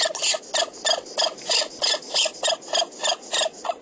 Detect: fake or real real